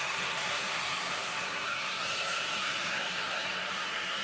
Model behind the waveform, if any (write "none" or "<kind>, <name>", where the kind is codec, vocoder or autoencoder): codec, SNAC